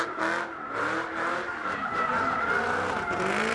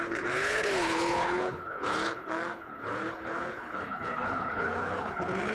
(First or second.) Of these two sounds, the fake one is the second